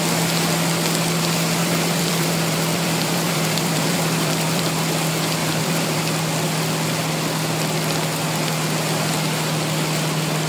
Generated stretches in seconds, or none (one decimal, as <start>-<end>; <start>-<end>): 1.6-4.6; 5.4-6.0